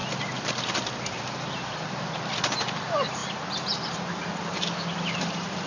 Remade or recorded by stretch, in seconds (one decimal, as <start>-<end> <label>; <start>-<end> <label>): 0.0-1.1 recorded; 1.1-3.2 remade; 3.2-3.8 recorded; 3.8-4.2 remade; 4.2-5.2 recorded; 5.2-5.7 remade